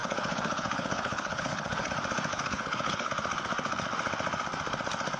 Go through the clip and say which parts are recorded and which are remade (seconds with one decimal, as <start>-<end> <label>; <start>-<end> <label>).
0.0-1.9 remade; 1.9-2.3 recorded; 2.3-3.1 remade; 3.1-5.2 recorded